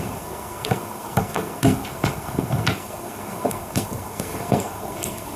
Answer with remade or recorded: remade